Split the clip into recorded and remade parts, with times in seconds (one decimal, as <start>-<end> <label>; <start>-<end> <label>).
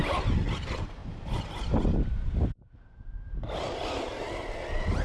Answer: 0.0-5.0 recorded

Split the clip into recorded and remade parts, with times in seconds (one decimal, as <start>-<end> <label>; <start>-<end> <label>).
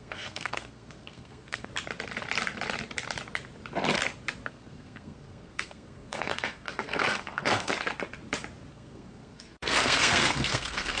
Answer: 0.0-1.7 remade; 1.7-4.5 recorded; 4.5-7.7 remade; 7.7-8.7 recorded; 8.7-11.0 remade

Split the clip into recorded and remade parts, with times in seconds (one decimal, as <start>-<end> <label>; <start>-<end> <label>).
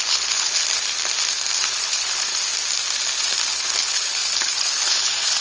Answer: 0.0-0.6 remade; 0.6-1.6 recorded; 1.6-2.3 remade; 2.3-3.5 recorded; 3.5-5.4 remade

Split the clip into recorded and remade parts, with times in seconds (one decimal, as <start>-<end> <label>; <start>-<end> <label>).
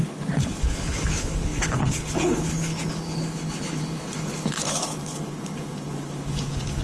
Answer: 0.0-6.8 remade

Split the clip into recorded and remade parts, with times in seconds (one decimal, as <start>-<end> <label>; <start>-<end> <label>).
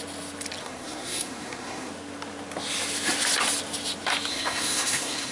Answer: 0.0-0.6 recorded; 0.6-1.9 remade; 1.9-4.3 recorded; 4.3-5.3 remade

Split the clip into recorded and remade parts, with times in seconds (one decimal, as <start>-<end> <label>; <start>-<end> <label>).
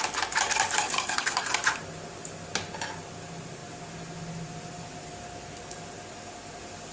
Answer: 0.0-0.8 recorded; 0.8-1.5 remade; 1.5-6.9 recorded